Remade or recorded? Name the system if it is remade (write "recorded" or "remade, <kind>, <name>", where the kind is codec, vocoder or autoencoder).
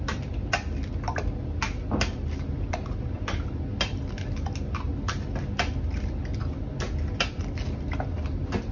recorded